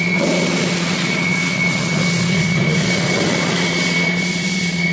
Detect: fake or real fake